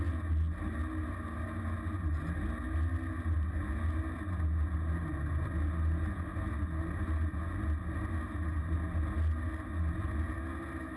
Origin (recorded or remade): recorded